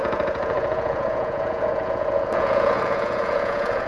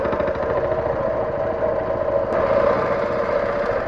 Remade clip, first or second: first